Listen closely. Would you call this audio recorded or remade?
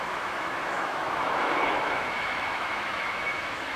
remade